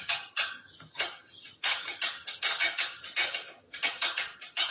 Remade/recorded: remade